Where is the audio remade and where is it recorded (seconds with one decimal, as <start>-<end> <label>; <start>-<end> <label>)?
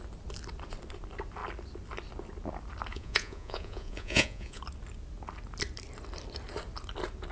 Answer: 0.0-2.9 recorded; 2.9-4.6 remade; 4.6-7.3 recorded